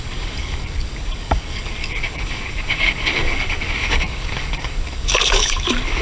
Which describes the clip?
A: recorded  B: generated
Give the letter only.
B